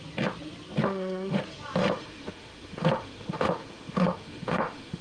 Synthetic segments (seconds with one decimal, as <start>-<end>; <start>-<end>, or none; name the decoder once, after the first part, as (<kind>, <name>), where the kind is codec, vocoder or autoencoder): 0.8-1.4 (autoencoder, DAC-VAE); 1.8-5.0